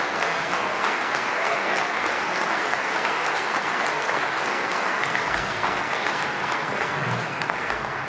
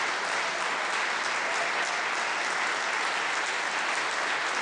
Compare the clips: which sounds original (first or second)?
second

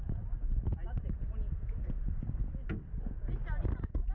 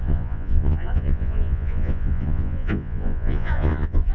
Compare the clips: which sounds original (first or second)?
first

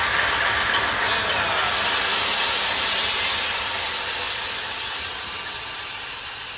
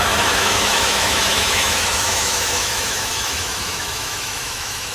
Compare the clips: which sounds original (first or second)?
first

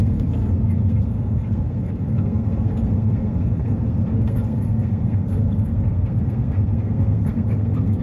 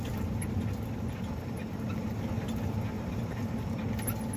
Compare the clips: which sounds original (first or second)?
second